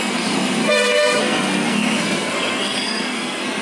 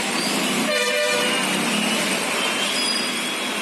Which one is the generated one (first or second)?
first